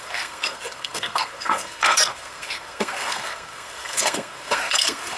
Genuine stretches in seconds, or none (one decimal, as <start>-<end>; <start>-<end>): none